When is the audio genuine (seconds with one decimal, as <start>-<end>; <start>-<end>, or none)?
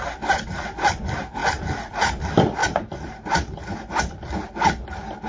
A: 0.0-1.4; 2.2-2.6; 4.0-5.3